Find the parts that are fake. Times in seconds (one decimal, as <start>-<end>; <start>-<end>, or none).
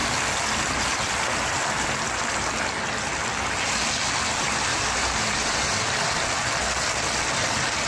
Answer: 4.7-5.8